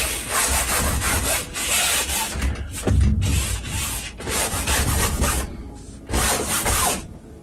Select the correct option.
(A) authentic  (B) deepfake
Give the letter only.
A